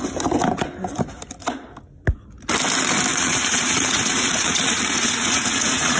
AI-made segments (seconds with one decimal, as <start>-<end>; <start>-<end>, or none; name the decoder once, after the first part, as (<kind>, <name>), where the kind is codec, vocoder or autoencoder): 3.1-6.0 (vocoder, Vocos)